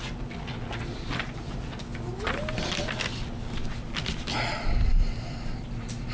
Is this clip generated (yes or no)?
no